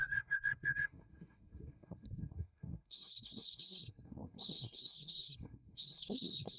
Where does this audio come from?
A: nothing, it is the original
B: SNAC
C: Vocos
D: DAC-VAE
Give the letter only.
B